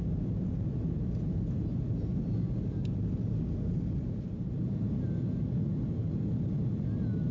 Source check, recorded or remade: recorded